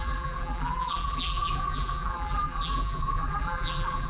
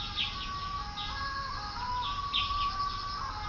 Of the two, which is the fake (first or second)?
first